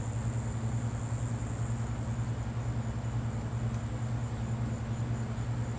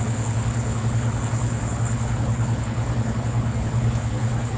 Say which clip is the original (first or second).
first